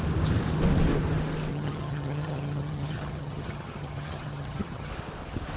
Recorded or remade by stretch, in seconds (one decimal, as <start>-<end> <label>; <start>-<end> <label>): 0.0-1.5 recorded; 1.5-4.9 remade; 4.9-5.6 recorded